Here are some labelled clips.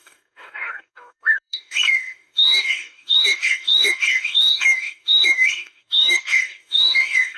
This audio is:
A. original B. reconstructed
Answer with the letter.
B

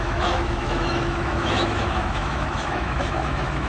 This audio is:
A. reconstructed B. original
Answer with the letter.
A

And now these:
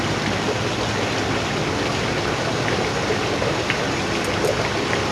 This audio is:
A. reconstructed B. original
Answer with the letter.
B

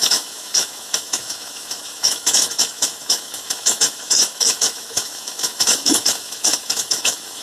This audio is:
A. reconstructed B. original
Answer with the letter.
A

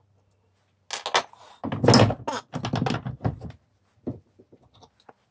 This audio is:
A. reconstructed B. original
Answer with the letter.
B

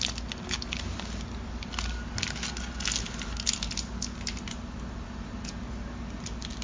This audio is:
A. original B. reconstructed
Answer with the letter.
A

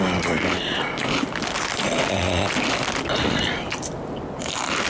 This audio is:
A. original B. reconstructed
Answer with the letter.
A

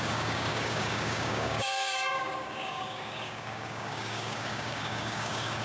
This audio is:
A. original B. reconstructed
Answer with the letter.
B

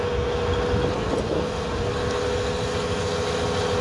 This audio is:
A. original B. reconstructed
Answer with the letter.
A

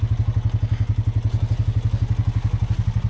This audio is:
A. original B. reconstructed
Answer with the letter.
A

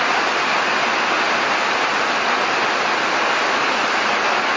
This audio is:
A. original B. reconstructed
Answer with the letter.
A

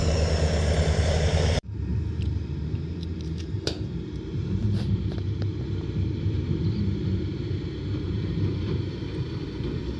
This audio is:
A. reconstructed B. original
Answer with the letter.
A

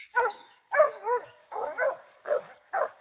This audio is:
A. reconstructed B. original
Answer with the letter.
A